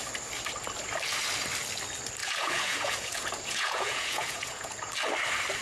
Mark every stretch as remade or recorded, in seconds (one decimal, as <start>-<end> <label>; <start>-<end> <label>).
0.0-2.2 recorded; 2.2-4.9 remade; 4.9-5.6 recorded

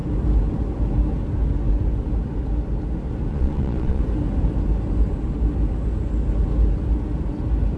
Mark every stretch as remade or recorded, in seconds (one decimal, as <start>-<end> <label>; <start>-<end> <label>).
0.0-3.3 recorded; 3.3-4.0 remade; 4.0-7.8 recorded